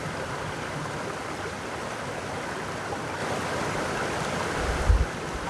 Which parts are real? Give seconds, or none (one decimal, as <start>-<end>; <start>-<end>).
0.0-5.5